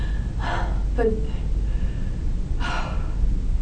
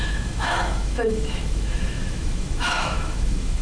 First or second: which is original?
first